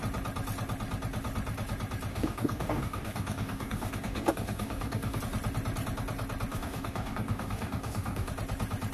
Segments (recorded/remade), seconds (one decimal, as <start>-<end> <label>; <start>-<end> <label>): 0.0-2.1 recorded; 2.1-5.2 remade; 5.2-6.5 recorded; 6.5-8.3 remade; 8.3-8.9 recorded

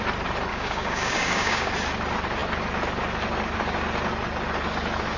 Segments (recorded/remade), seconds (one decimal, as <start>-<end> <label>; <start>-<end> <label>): 0.0-0.5 recorded; 0.5-1.7 remade; 1.7-5.2 recorded

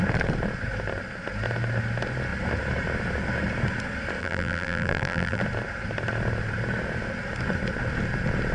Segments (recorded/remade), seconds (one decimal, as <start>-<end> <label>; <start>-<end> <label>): 0.0-4.2 recorded; 4.2-5.4 remade; 5.4-8.5 recorded